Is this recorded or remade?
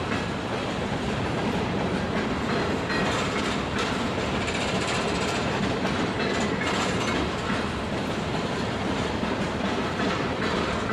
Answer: remade